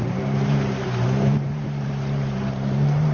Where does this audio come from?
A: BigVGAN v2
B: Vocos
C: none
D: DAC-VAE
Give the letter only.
A